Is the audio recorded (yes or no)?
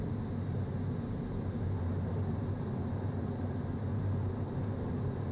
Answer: yes